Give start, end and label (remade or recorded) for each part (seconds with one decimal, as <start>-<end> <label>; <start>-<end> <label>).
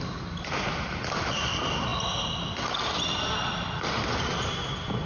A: 0.0-5.1 recorded